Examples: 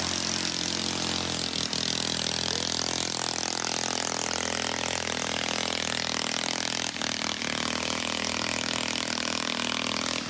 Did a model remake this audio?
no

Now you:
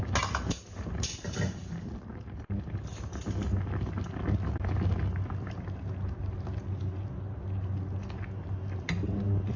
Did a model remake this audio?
no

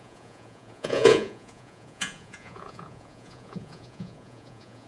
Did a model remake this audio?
yes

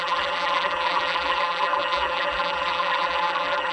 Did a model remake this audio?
yes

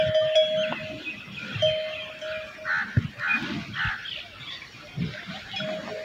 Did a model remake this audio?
no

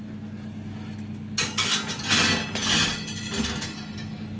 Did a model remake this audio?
no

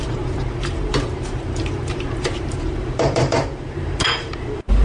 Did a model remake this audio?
yes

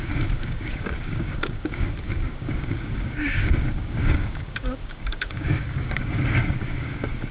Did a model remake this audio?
yes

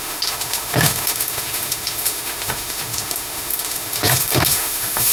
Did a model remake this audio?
yes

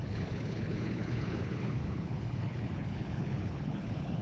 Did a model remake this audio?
yes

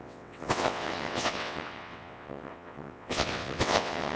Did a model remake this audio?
yes